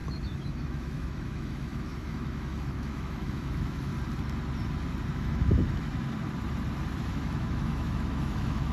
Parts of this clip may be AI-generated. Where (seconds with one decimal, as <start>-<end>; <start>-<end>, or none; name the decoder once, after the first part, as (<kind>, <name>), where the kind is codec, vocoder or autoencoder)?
0.0-3.9 (autoencoder, DAC-VAE); 5.1-5.9; 7.0-8.7